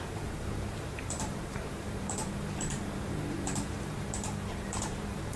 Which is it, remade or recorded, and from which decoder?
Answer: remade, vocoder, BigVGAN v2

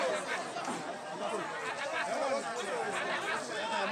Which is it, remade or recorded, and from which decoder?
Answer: recorded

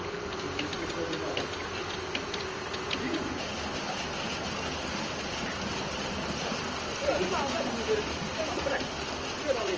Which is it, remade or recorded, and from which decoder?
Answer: recorded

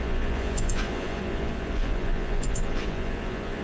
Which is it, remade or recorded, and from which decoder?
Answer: remade, vocoder, Vocos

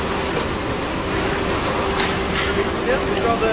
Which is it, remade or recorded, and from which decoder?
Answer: recorded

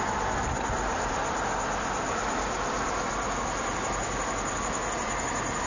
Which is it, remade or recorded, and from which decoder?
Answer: recorded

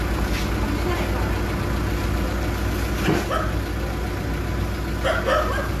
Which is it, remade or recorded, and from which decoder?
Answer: recorded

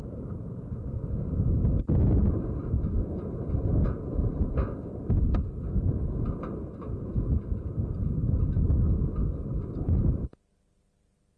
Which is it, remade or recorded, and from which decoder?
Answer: recorded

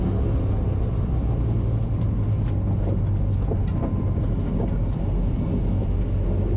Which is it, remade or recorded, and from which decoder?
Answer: recorded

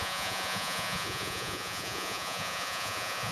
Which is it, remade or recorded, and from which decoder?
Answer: remade, vocoder, Vocos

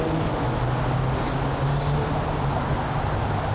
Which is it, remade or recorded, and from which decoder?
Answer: recorded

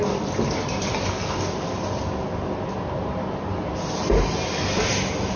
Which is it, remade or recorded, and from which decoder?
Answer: recorded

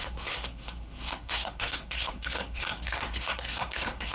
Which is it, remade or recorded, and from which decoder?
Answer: remade, codec, SNAC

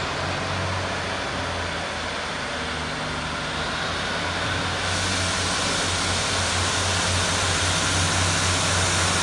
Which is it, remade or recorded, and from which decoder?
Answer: recorded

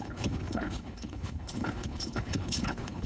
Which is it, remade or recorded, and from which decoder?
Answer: remade, codec, HILCodec